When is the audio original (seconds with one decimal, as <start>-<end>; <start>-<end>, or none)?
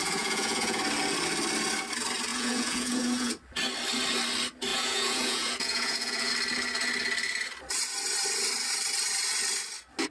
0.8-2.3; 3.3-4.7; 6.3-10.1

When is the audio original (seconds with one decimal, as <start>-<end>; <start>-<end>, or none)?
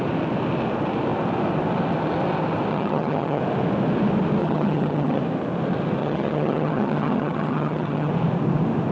0.0-2.7; 3.4-4.4; 5.2-6.0; 8.1-8.9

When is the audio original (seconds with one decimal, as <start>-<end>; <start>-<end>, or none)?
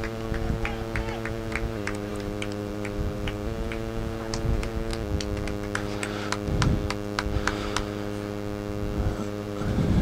4.9-9.1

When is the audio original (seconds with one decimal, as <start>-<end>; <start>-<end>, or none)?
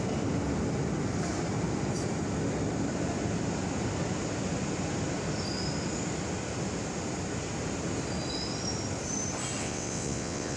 0.0-9.6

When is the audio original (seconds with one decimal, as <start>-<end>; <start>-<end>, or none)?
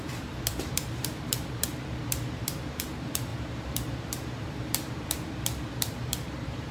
none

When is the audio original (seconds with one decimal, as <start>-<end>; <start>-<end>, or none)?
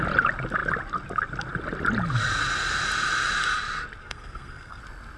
0.0-4.0; 4.8-5.2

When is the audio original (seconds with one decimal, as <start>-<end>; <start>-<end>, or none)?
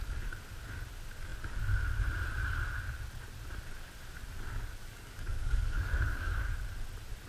0.0-4.8; 6.5-7.3